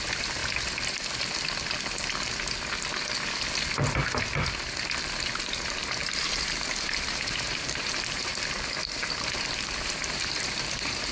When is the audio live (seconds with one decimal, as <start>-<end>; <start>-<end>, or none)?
0.4-5.7; 8.3-8.8